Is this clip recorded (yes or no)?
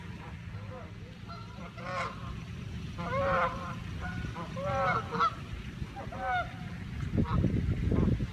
yes